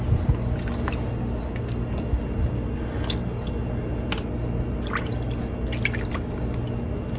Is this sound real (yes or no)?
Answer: yes